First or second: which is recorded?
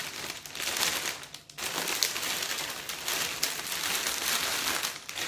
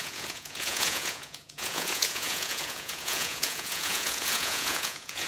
first